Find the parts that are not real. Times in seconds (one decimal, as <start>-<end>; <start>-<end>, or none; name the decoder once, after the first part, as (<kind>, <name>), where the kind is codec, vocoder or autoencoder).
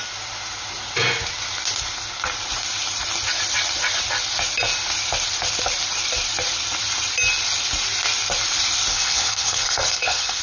8.9-10.4 (codec, HILCodec)